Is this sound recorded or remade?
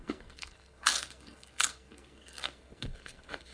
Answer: remade